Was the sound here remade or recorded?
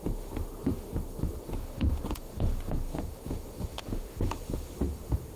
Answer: remade